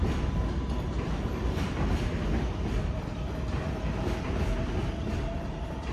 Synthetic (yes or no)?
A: yes